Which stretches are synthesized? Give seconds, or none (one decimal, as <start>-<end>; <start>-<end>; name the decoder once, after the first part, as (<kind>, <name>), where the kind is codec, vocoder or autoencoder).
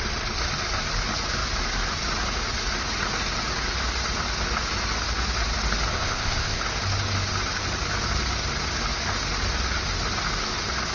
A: 5.9-6.6 (codec, ZipCodec)